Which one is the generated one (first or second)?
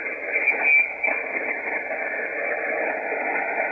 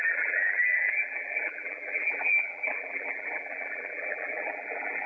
second